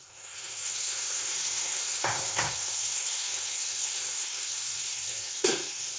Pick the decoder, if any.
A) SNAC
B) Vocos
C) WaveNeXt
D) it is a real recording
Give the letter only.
A